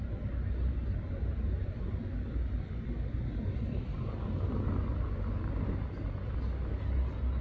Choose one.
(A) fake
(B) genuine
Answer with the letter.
B